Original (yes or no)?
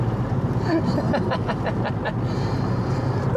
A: yes